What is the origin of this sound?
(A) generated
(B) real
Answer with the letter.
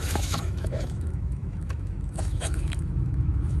A